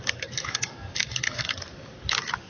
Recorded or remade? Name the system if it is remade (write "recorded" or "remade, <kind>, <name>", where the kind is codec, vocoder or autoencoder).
remade, codec, DAC